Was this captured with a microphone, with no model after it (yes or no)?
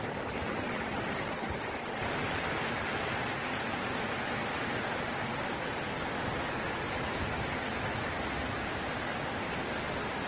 yes